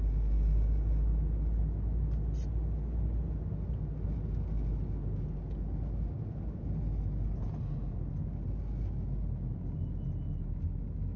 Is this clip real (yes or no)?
yes